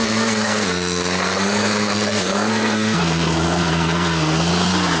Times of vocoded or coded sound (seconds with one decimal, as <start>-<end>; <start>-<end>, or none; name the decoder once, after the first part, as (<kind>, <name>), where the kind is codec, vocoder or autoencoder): 0.0-4.5 (codec, SNAC)